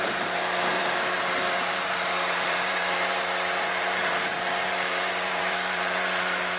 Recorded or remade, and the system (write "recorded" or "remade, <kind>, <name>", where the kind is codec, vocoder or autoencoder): remade, vocoder, BigVGAN v2